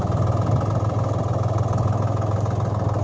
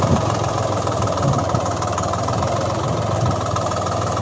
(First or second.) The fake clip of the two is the second